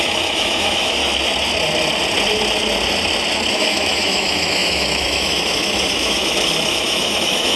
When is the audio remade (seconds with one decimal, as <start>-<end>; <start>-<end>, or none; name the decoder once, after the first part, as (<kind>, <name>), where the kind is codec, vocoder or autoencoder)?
0.0-1.0 (autoencoder, DAC-VAE); 3.5-7.6